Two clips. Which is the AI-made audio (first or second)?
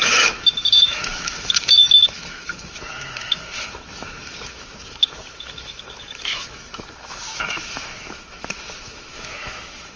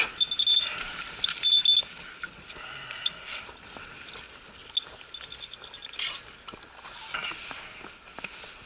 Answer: first